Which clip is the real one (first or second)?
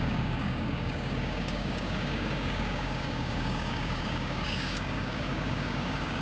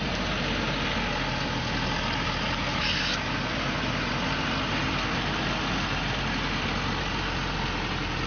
second